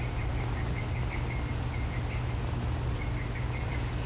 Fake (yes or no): no